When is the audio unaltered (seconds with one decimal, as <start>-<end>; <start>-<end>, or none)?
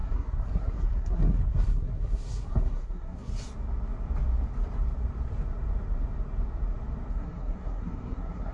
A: 3.3-7.1